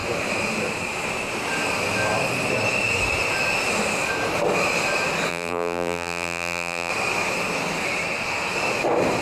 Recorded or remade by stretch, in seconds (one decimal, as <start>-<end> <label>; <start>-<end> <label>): 0.0-5.3 recorded; 5.3-6.9 remade; 6.9-9.2 recorded